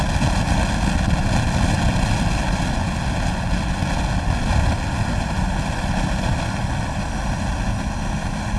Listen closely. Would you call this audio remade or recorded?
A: recorded